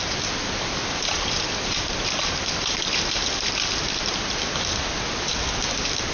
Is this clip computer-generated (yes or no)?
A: no